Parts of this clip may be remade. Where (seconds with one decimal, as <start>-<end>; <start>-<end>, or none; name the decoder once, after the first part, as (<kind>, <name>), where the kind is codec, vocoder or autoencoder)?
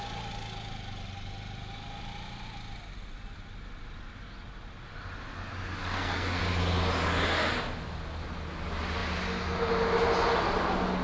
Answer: 5.8-6.4 (codec, SNAC)